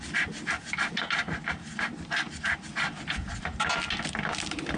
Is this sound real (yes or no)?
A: yes